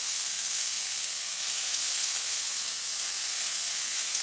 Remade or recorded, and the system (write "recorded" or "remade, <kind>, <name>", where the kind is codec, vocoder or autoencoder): remade, codec, SNAC